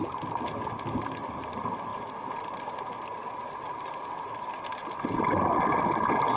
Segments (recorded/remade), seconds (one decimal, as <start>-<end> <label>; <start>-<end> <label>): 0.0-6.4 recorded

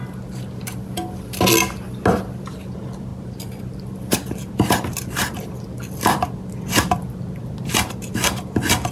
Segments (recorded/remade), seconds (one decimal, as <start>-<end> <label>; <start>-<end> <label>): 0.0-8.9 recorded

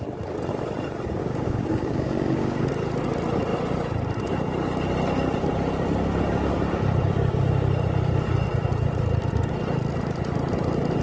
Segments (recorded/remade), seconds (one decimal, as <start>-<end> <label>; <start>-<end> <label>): 0.0-1.2 recorded; 1.2-2.7 remade; 2.7-11.0 recorded